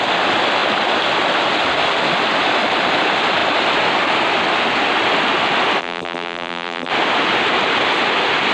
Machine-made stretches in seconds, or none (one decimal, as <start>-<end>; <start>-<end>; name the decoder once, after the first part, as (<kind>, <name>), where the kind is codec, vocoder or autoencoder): 5.8-6.9 (vocoder, BigVGAN v2)